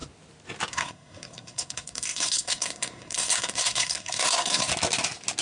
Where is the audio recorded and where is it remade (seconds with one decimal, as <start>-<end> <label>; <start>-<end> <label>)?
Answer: 0.0-0.7 recorded; 0.7-4.7 remade; 4.7-5.4 recorded